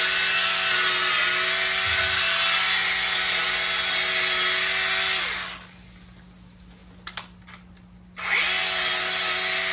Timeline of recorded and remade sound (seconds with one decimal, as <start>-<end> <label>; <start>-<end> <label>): 0.0-9.7 recorded